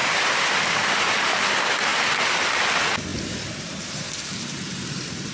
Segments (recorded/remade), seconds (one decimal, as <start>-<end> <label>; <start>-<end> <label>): 0.0-1.3 remade; 1.3-1.9 recorded; 1.9-2.6 remade; 2.6-3.1 recorded; 3.1-4.1 remade; 4.1-5.3 recorded